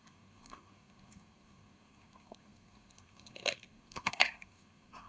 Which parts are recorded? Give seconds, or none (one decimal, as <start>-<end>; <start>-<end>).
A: none